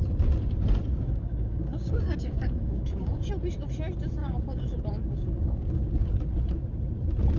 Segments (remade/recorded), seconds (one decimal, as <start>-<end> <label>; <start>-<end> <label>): 0.0-0.9 recorded; 0.9-3.3 remade; 3.3-4.2 recorded; 4.2-5.9 remade; 5.9-7.4 recorded